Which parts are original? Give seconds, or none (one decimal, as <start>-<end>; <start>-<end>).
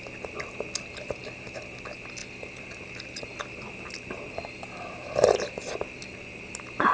0.0-6.9